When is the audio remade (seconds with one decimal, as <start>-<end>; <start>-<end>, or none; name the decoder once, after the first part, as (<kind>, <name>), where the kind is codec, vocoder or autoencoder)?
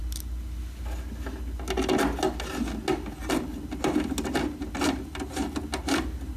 none